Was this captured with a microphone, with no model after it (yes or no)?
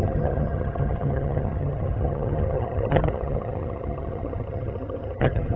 no